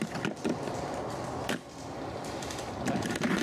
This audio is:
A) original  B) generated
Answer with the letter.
A